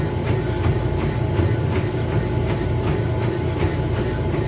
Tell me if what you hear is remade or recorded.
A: recorded